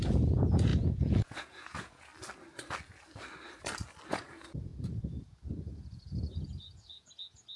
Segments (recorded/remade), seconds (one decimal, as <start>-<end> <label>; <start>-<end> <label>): 0.0-2.1 remade; 2.1-4.1 recorded; 4.1-7.6 remade